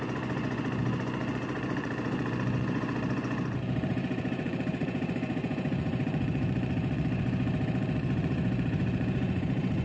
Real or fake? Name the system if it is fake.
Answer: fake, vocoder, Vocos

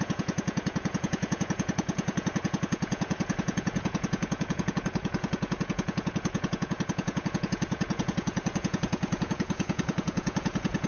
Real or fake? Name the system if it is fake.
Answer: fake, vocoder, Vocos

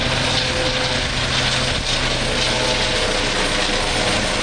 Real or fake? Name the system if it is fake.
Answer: real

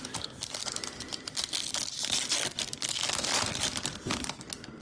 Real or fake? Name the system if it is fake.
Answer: real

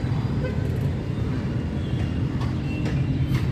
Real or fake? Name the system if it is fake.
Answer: real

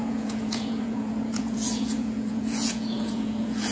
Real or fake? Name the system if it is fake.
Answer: fake, vocoder, Vocos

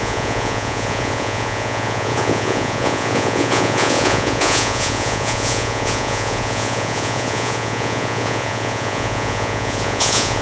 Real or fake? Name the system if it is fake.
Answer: fake, vocoder, Vocos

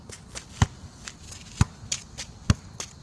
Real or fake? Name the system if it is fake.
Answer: real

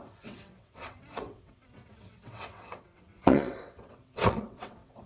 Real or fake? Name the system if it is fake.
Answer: fake, vocoder, WaveNeXt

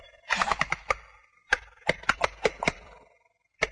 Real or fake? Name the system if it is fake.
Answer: real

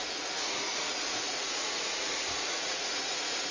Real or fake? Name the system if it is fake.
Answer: fake, vocoder, Vocos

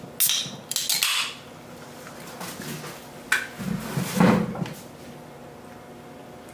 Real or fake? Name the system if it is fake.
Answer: real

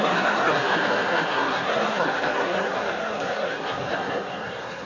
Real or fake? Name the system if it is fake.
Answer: fake, codec, SNAC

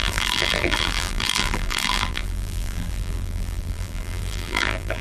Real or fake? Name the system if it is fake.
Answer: fake, vocoder, BigVGAN v2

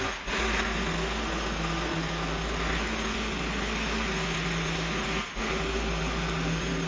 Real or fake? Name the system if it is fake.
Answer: real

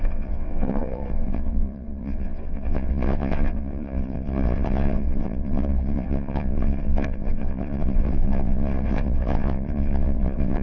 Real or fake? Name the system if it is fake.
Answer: fake, vocoder, WaveNeXt